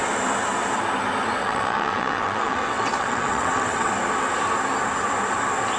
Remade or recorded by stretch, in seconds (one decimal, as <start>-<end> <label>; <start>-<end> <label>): 0.0-1.4 recorded; 1.4-3.9 remade; 3.9-5.8 recorded